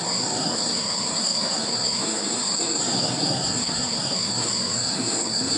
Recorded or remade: remade